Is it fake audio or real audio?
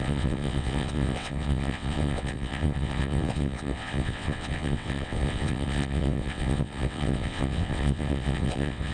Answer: fake